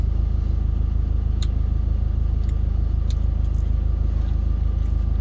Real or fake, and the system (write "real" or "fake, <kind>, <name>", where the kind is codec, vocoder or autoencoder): real